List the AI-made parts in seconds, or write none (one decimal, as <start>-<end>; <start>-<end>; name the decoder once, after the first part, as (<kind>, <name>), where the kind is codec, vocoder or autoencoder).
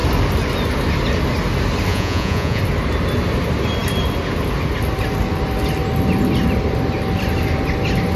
1.9-2.6 (vocoder, Vocos)